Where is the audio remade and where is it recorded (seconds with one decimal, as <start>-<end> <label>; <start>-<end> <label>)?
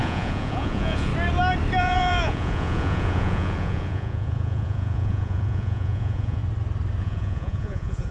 0.0-1.1 remade; 1.1-1.8 recorded; 1.8-6.4 remade; 6.4-7.0 recorded; 7.0-8.1 remade